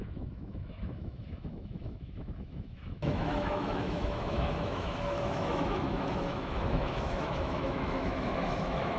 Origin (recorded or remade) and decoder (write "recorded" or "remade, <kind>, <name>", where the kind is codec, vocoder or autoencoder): remade, autoencoder, DAC-VAE